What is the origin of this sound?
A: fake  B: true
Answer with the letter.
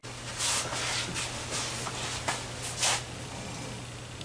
B